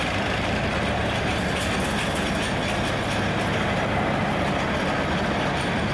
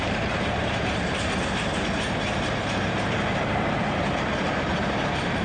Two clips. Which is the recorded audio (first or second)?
first